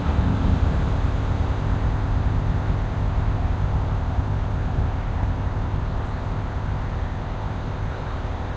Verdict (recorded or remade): remade